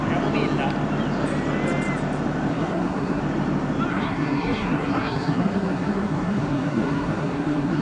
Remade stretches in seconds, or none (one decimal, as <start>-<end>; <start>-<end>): 2.5-3.2; 3.9-7.8

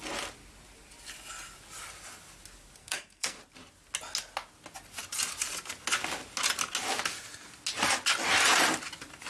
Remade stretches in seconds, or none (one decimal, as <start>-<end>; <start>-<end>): 2.8-3.4

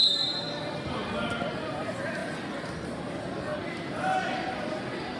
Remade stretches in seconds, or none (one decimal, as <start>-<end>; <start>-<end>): none

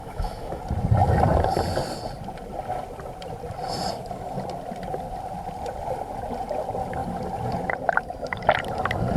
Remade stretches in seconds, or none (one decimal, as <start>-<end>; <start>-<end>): 0.0-0.6

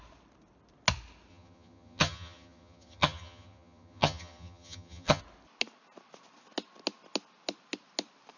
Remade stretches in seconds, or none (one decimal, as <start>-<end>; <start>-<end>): 1.3-5.2

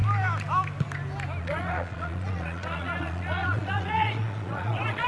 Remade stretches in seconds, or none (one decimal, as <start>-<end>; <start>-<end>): 1.4-5.1

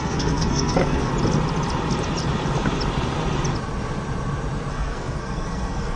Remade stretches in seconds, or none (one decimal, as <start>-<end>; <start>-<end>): 0.0-1.1; 4.7-6.0